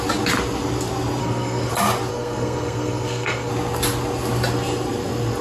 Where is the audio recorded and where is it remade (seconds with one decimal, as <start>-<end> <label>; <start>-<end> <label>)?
0.0-1.2 recorded; 1.2-1.7 remade; 1.7-2.1 recorded; 2.1-3.5 remade; 3.5-5.4 recorded